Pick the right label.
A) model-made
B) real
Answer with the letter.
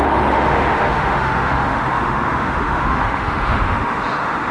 A